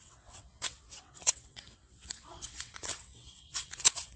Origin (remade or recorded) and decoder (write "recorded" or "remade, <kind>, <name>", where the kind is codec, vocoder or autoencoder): remade, vocoder, WaveNeXt